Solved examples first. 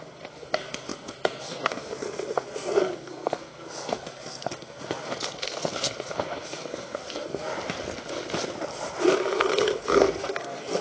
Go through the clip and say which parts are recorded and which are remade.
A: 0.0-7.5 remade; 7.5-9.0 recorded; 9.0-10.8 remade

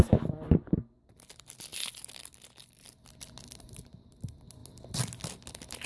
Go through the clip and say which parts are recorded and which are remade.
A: 0.0-5.9 recorded

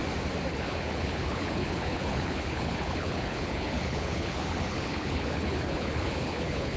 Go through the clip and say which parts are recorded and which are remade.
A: 0.0-0.5 recorded; 0.5-6.8 remade

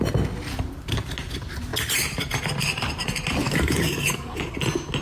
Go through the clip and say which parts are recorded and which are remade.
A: 0.0-3.4 recorded; 3.4-4.5 remade; 4.5-5.0 recorded

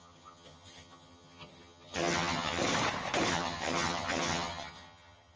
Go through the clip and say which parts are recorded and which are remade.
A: 0.0-2.6 remade; 2.6-3.3 recorded; 3.3-5.4 remade

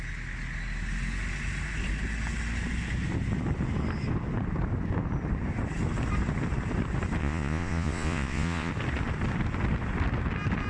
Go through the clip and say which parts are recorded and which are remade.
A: 0.0-7.2 recorded; 7.2-8.7 remade; 8.7-10.7 recorded